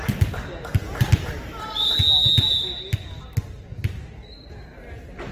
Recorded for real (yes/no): yes